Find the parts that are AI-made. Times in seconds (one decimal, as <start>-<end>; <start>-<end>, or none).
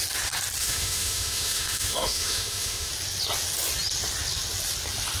0.6-2.9